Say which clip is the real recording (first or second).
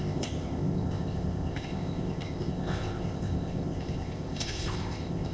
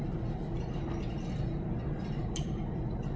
second